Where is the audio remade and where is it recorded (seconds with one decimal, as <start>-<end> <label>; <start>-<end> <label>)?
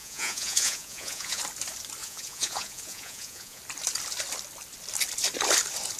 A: 0.0-1.4 remade; 1.4-2.0 recorded; 2.0-3.6 remade; 3.6-6.0 recorded